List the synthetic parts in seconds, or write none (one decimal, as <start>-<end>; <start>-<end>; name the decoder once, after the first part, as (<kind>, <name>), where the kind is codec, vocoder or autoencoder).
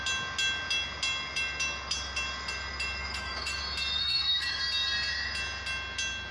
3.0-3.6 (autoencoder, DAC-VAE); 4.0-4.6